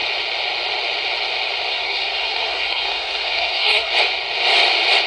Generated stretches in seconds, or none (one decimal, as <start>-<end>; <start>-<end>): 1.7-3.9